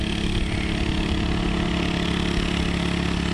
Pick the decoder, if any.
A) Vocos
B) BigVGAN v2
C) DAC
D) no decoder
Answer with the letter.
D